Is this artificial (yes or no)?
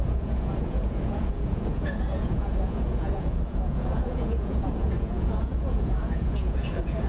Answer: yes